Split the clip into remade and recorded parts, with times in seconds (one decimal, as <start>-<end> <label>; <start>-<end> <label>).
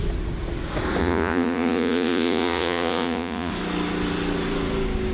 0.0-1.0 recorded; 1.0-3.5 remade; 3.5-5.1 recorded